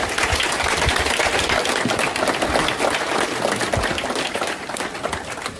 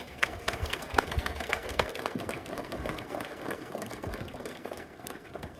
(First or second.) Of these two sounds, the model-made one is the second